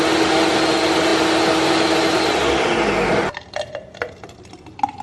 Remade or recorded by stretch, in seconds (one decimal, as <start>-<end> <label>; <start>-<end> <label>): 0.0-5.0 recorded